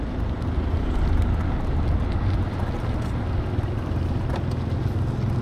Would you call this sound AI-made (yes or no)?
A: no